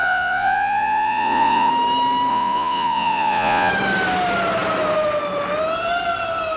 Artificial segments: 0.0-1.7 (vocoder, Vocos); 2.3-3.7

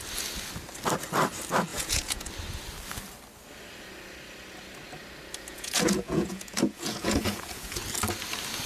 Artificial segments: 1.7-2.3 (vocoder, Vocos); 5.5-7.8

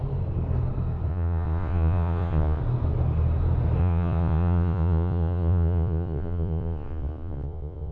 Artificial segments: 1.1-2.6 (vocoder, Vocos); 3.8-7.9

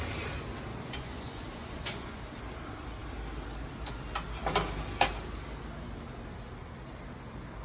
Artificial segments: 0.7-2.2 (vocoder, Vocos)

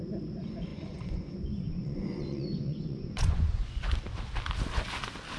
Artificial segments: 0.7-3.9 (vocoder, Vocos)

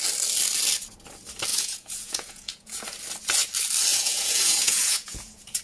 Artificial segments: 1.5-2.8 (vocoder, Vocos); 3.9-5.6

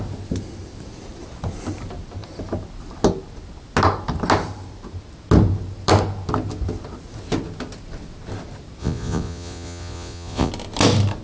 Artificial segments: 8.8-10.5 (vocoder, Vocos)

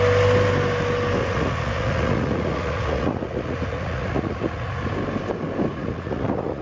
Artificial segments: 1.2-4.9 (vocoder, Vocos); 5.7-6.6